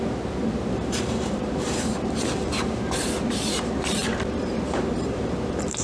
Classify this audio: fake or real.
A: fake